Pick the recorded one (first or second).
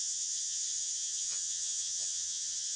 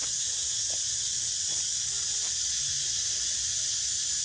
second